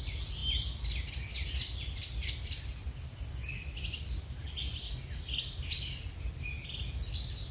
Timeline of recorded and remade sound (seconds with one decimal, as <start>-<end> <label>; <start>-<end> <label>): 0.0-7.5 recorded